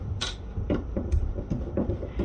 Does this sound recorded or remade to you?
remade